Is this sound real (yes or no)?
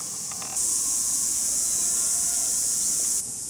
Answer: no